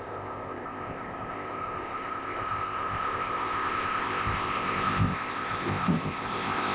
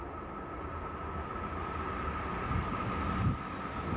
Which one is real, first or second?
second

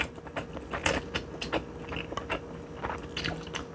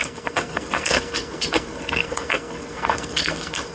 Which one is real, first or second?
first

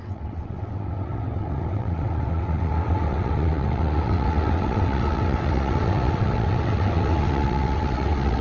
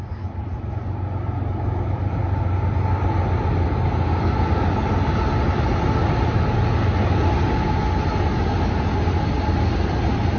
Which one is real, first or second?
second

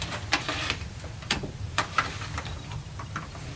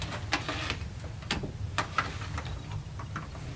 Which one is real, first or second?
second